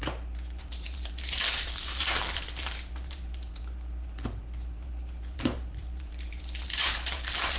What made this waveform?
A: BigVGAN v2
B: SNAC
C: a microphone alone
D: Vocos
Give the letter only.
A